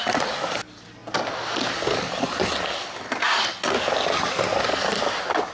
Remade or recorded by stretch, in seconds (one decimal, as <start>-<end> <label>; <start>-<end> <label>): 0.0-5.5 recorded